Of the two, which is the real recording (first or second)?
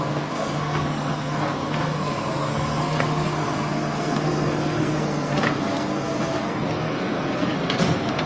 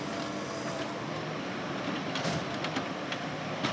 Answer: second